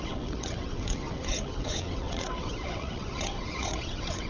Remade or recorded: remade